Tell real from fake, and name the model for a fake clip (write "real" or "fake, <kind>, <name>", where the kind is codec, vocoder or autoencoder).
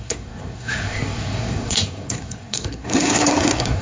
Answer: fake, codec, SNAC